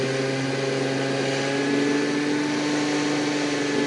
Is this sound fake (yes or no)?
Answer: no